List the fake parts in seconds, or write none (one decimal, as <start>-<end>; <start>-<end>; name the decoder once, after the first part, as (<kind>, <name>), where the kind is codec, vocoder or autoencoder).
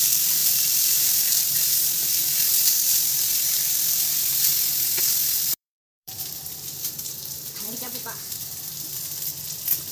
0.0-4.5 (vocoder, BigVGAN v2); 5.4-9.3